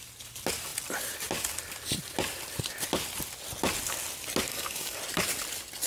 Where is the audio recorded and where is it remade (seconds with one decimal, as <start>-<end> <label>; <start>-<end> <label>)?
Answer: 0.0-4.5 recorded; 4.5-5.0 remade; 5.0-5.9 recorded